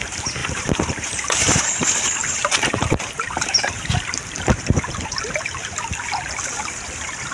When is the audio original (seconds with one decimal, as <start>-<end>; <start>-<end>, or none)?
0.0-0.4; 1.6-2.2; 4.7-7.3